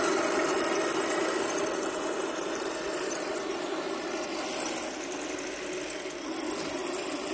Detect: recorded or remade recorded